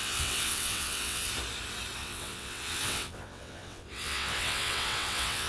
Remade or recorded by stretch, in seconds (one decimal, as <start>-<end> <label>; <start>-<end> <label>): 0.0-1.3 remade; 1.3-2.0 recorded; 2.0-5.5 remade